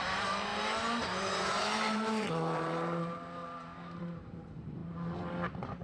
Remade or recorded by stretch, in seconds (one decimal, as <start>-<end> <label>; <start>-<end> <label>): 0.0-4.8 remade; 4.8-5.8 recorded